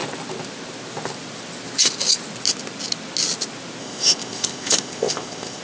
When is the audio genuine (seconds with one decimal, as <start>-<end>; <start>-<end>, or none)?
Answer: 0.0-3.8